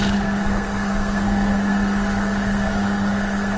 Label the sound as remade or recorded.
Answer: remade